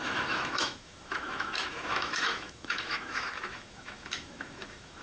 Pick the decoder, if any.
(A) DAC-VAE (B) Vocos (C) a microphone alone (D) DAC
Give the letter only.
A